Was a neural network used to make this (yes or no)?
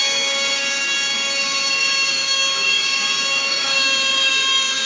yes